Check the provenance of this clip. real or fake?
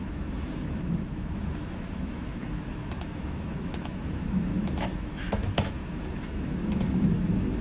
fake